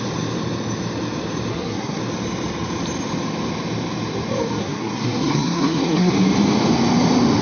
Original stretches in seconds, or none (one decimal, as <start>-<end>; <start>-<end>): 0.0-1.5; 2.0-4.6; 6.1-7.4